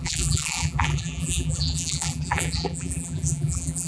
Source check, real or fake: fake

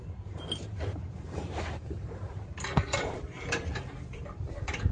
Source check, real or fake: fake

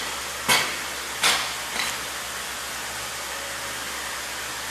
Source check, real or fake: real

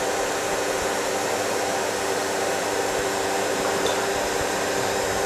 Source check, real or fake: fake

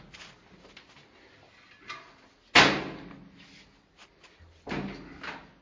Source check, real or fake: real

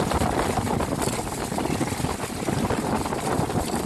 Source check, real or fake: real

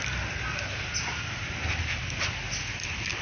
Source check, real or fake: real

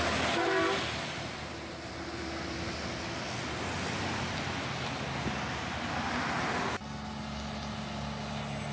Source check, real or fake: real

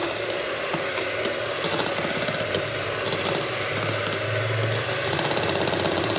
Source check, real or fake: real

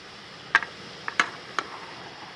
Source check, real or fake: fake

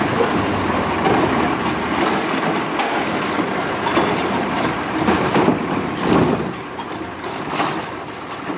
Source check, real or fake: fake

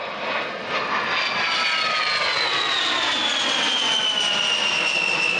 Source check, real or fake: real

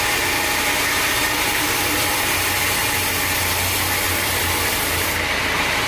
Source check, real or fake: real